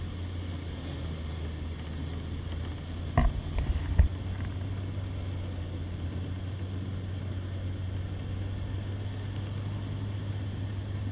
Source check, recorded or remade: recorded